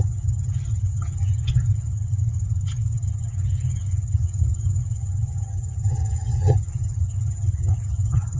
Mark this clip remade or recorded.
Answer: remade